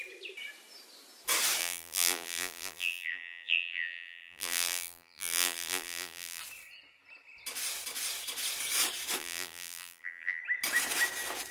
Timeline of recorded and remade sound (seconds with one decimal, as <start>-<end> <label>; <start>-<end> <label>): 0.0-1.6 recorded; 1.6-6.4 remade; 6.4-9.2 recorded; 9.2-10.4 remade; 10.4-11.5 recorded